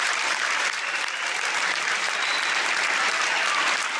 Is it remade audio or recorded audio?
recorded